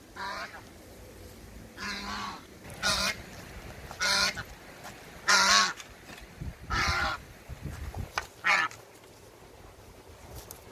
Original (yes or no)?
yes